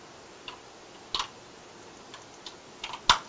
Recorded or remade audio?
recorded